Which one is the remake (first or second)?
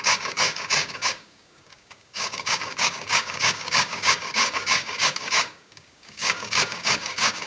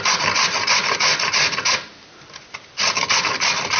first